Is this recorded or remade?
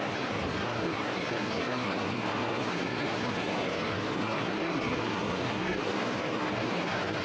remade